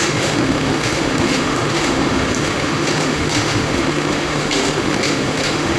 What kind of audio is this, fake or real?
fake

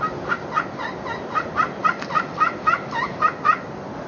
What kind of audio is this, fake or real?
real